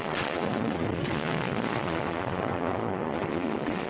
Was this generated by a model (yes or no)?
yes